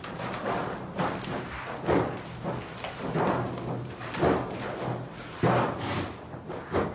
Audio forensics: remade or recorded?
recorded